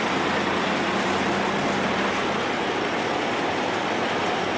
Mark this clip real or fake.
real